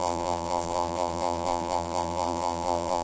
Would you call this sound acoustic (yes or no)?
no